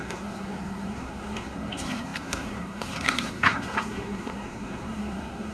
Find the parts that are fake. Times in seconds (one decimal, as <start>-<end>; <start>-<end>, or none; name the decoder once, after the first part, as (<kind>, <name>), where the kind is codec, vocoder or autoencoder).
0.0-5.5 (codec, SNAC)